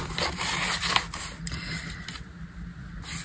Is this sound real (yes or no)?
yes